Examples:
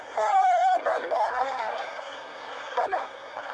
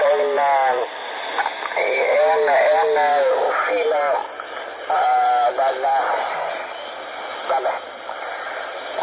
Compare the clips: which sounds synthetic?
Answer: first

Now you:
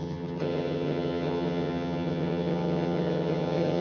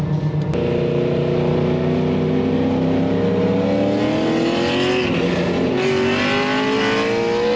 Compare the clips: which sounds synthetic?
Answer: first